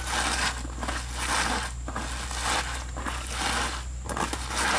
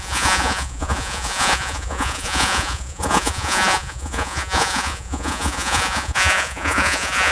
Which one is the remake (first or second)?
second